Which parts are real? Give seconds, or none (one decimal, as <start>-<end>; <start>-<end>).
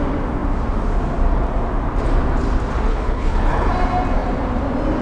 0.0-2.9; 3.7-5.0